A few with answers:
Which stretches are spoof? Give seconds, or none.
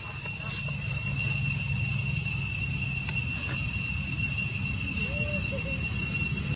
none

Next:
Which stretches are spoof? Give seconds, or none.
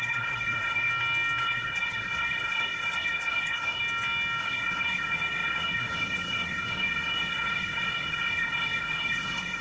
0.0-0.9 (codec, SNAC); 1.4-3.8; 4.4-9.6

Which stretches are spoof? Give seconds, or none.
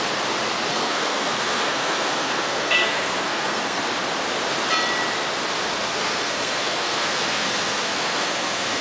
0.7-3.8 (codec, SNAC); 5.7-8.8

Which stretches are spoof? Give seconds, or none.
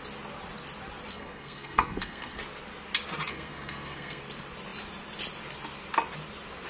1.1-2.4 (codec, SNAC); 3.3-4.2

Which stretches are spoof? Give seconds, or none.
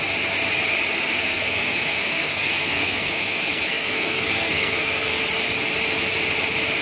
1.1-5.2 (codec, SNAC)